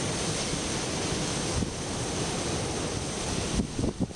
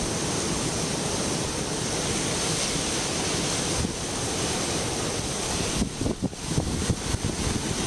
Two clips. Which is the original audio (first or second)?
second